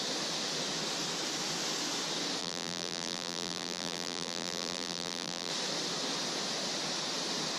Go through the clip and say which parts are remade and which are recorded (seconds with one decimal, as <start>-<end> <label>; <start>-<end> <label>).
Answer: 0.0-2.4 recorded; 2.4-5.5 remade; 5.5-7.6 recorded